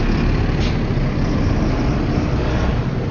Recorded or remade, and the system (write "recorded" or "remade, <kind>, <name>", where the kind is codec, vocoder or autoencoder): recorded